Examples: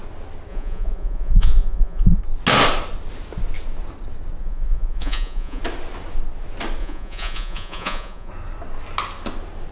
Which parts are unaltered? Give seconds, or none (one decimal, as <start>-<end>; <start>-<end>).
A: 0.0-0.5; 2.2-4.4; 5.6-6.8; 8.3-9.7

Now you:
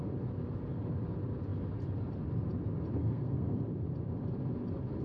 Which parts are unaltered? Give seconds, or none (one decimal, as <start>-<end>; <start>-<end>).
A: 0.0-3.0; 3.6-5.0

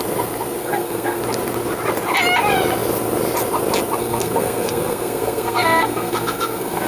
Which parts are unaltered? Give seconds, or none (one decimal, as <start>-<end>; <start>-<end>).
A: 0.0-0.6; 1.2-4.0

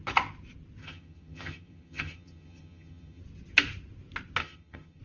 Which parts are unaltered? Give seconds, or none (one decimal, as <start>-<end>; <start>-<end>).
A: 0.0-0.8; 3.2-4.4